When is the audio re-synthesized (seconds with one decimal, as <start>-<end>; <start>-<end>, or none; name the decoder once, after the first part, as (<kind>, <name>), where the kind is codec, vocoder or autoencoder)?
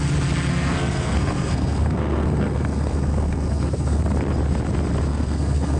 0.5-4.0 (codec, SNAC); 5.1-5.8